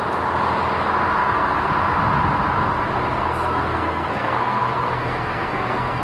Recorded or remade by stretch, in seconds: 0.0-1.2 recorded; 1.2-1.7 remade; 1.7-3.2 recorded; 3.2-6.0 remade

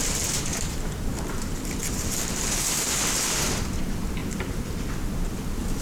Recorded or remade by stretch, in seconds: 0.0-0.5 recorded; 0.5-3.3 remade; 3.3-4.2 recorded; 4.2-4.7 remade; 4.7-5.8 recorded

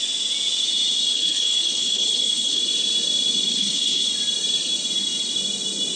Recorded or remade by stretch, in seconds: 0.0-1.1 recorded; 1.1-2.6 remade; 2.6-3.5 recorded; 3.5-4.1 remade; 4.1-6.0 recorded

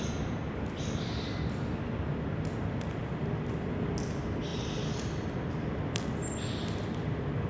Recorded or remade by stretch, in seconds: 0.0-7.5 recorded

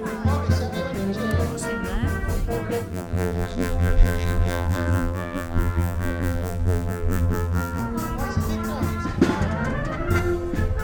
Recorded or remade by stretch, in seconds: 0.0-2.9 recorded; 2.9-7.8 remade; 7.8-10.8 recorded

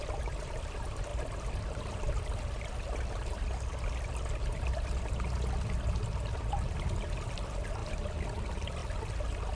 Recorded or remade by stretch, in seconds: 0.0-9.5 recorded

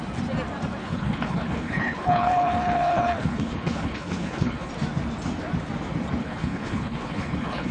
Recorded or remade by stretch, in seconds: 0.0-0.8 recorded; 0.8-4.7 remade; 4.7-6.2 recorded; 6.2-7.7 remade